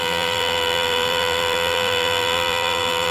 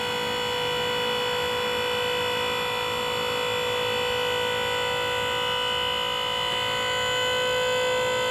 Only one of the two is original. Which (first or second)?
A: second